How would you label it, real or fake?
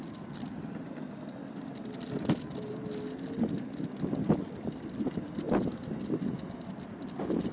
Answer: real